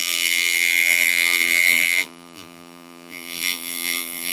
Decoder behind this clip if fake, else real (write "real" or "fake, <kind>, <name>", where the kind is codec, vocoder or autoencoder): fake, vocoder, BigVGAN v2